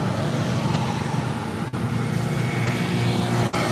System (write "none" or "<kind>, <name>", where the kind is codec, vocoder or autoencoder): none